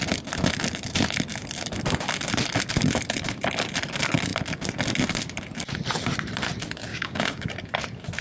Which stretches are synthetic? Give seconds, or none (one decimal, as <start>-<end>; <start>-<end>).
6.9-7.5